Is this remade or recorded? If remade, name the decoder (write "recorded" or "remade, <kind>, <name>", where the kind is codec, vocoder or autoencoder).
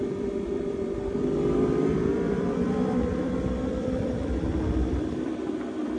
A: remade, vocoder, BigVGAN v2